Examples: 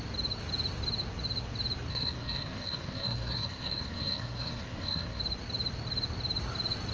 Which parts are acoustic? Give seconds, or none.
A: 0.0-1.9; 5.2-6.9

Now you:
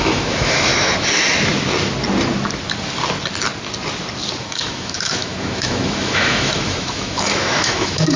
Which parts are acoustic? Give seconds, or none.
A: 0.7-4.4

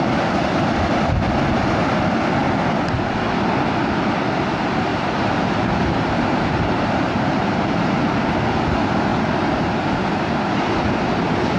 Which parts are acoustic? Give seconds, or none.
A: 0.0-4.9; 8.2-9.1; 11.0-11.6